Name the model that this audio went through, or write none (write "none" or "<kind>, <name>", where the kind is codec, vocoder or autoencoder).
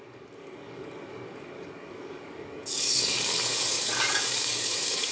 codec, DAC